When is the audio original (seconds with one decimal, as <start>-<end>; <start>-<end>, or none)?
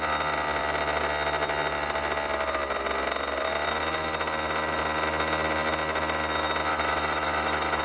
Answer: 0.0-6.7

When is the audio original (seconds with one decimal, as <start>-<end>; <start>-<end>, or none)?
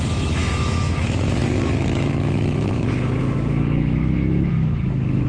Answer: none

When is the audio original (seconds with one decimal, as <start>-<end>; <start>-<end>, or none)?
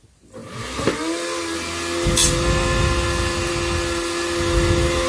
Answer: 0.0-5.1